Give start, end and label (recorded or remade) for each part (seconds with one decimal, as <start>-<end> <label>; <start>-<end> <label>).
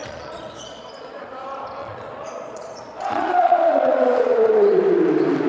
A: 0.0-1.3 remade; 1.3-1.8 recorded; 1.8-4.8 remade; 4.8-5.5 recorded